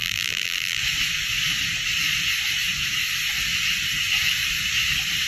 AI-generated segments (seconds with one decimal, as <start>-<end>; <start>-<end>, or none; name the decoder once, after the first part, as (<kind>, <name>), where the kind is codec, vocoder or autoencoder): 0.0-0.8 (vocoder, BigVGAN v2)